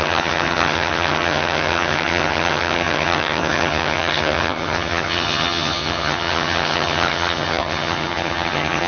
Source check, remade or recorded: remade